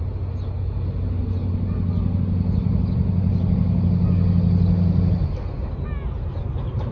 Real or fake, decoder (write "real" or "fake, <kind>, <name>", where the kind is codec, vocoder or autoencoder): real